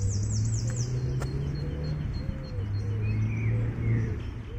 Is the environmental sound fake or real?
real